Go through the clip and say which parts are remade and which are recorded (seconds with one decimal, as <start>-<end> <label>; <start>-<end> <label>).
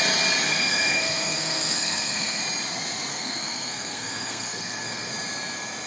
0.0-0.5 recorded; 0.5-2.4 remade; 2.4-3.1 recorded; 3.1-5.1 remade; 5.1-5.9 recorded